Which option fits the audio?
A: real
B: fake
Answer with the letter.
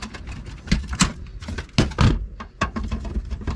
A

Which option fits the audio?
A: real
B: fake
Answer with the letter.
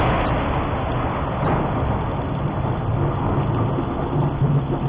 A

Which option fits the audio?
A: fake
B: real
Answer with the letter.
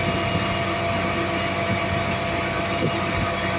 B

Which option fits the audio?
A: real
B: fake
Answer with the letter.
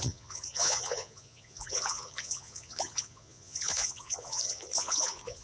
B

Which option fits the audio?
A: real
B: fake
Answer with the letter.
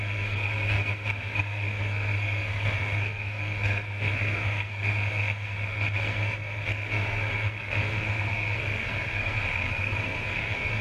B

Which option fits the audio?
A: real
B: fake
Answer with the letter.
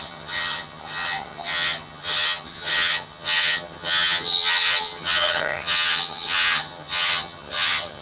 B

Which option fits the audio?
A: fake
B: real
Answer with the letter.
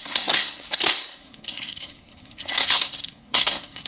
A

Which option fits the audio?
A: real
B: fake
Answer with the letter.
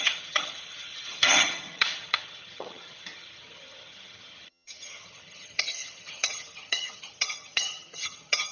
B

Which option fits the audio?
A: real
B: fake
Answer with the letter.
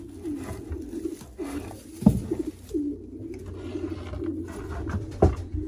A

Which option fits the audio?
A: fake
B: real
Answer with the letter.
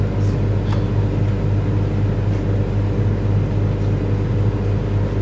B